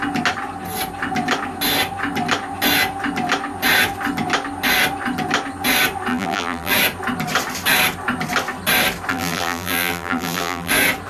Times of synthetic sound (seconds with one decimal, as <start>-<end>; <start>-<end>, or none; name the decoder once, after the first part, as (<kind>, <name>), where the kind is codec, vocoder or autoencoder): 6.1-6.7 (vocoder, BigVGAN v2); 9.1-10.7